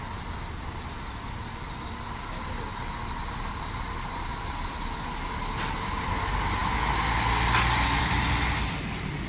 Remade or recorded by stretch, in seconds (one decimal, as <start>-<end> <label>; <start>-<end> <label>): 0.0-9.3 recorded